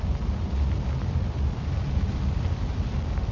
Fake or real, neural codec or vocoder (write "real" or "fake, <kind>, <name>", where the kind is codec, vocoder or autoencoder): fake, vocoder, BigVGAN v2